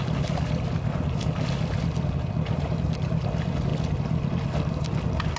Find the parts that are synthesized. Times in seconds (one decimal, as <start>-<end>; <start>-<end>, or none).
none